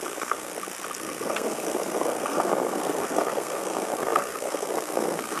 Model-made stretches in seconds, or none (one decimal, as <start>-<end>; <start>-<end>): 0.0-0.5; 1.0-5.4